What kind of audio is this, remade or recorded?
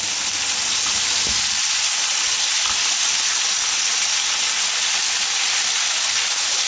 recorded